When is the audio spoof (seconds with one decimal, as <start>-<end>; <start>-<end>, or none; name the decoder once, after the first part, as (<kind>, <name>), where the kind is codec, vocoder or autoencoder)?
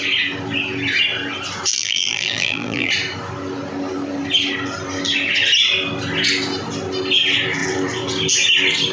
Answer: 1.7-2.9 (vocoder, BigVGAN v2)